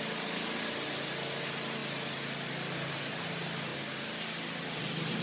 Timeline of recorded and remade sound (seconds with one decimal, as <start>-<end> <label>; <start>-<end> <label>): 0.0-5.2 recorded